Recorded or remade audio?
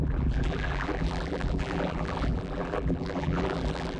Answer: remade